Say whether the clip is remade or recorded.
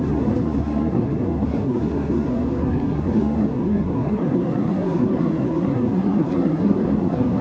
remade